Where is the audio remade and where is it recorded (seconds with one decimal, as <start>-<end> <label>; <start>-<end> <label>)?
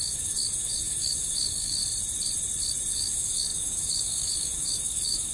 0.0-1.8 remade; 1.8-2.9 recorded; 2.9-5.3 remade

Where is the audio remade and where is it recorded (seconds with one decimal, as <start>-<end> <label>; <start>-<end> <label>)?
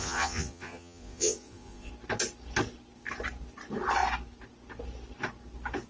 0.0-1.9 remade; 1.9-5.9 recorded